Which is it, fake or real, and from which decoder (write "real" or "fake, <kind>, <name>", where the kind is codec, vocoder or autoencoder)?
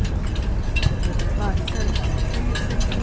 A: real